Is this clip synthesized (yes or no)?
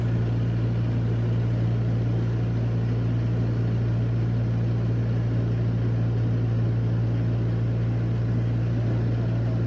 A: no